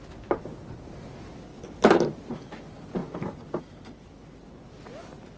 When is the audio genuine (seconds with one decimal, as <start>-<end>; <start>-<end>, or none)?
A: 0.0-1.5; 2.3-5.4